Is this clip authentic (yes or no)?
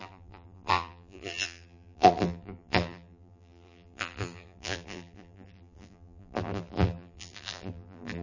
no